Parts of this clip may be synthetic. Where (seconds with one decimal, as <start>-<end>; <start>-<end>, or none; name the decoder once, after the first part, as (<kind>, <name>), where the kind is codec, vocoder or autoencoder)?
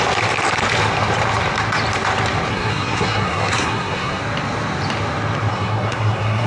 2.5-4.2 (codec, SNAC); 5.5-6.5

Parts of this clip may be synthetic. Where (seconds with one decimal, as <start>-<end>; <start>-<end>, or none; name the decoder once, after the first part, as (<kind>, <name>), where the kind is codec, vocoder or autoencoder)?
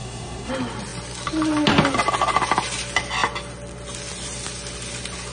0.0-0.5 (codec, SNAC)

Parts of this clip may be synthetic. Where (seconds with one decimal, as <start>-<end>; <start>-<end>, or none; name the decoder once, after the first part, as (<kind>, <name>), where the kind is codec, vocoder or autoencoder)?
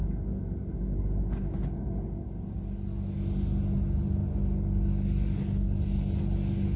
none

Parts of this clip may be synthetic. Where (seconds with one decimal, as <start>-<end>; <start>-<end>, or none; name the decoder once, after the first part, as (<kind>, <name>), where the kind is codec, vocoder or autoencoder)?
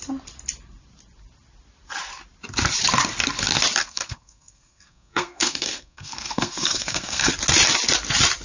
3.8-7.3 (codec, SNAC)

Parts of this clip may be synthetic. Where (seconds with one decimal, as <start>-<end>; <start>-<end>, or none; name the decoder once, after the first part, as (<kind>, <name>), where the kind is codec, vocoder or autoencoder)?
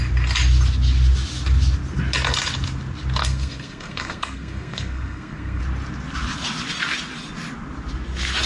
3.2-5.6 (codec, SNAC)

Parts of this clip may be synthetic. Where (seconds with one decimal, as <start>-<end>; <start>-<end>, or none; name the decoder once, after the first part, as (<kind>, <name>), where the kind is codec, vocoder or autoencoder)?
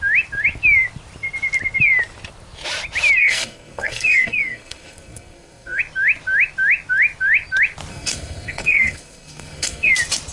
3.2-5.8 (codec, SNAC); 7.9-9.9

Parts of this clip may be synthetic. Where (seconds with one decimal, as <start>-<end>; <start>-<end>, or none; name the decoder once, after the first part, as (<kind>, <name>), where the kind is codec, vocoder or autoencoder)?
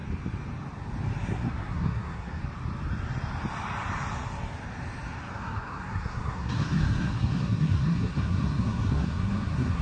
1.3-2.4 (codec, SNAC); 5.3-9.8